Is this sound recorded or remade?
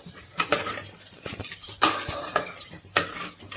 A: remade